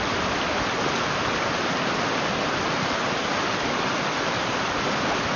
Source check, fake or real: real